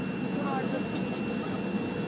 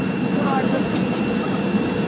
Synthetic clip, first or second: second